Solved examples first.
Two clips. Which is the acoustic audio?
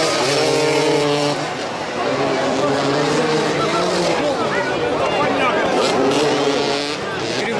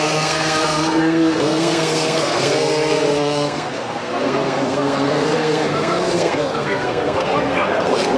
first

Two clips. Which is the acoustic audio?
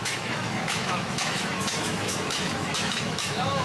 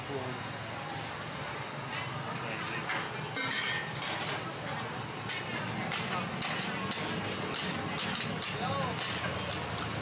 second